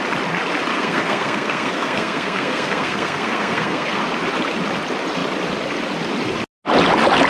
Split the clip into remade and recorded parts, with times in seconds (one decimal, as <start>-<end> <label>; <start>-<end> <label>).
0.0-0.7 recorded; 0.7-4.0 remade; 4.0-7.3 recorded